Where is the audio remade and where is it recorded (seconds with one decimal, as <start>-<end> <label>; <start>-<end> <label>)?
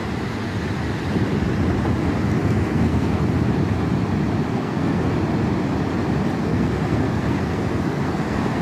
0.0-2.4 recorded; 2.4-3.2 remade; 3.2-4.5 recorded; 4.5-5.1 remade; 5.1-6.4 recorded; 6.4-8.6 remade